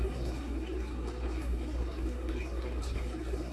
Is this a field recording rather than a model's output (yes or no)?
no